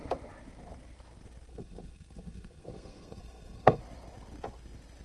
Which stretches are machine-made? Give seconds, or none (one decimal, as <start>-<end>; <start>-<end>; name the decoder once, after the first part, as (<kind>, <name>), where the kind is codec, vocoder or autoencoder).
1.5-3.8 (codec, SNAC)